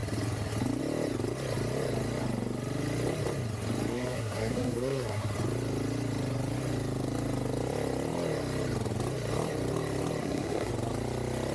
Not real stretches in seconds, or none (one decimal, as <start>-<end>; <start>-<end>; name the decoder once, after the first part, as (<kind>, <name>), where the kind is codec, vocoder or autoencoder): 3.9-5.3 (codec, SNAC); 10.2-10.7